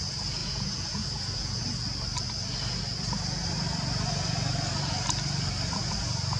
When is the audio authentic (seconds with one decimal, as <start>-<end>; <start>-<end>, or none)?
0.0-0.4; 1.6-6.4